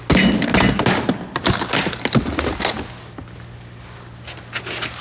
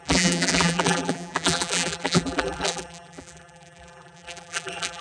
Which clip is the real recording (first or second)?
first